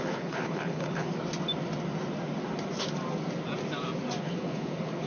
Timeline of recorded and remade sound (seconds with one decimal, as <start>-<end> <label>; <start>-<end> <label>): 0.0-1.1 remade; 1.1-4.2 recorded; 4.2-5.1 remade